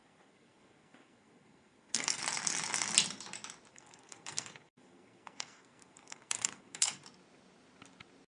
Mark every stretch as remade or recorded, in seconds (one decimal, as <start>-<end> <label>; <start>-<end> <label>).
0.0-2.2 remade; 2.2-3.7 recorded; 3.7-7.0 remade; 7.0-8.3 recorded